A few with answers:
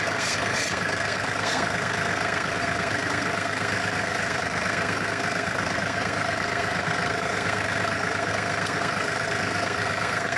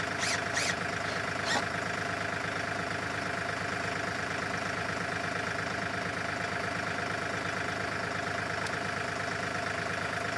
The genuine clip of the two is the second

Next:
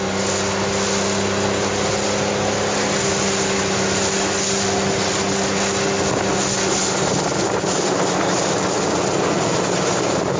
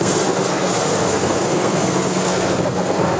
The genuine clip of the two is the first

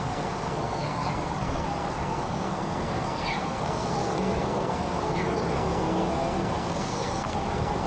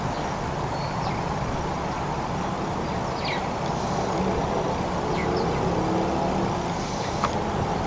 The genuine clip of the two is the second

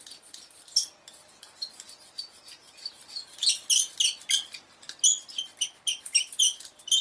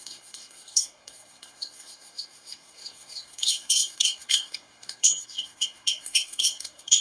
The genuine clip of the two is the first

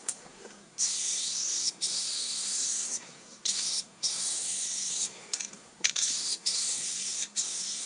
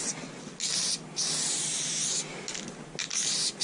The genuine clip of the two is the second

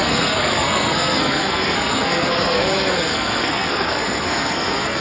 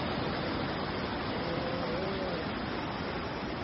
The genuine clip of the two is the second